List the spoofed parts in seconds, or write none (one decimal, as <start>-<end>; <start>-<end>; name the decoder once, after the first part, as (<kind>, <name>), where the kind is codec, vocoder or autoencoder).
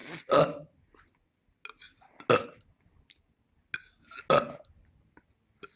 none